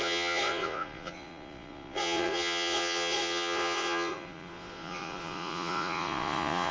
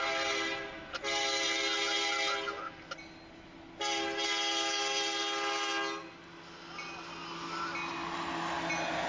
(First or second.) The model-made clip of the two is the first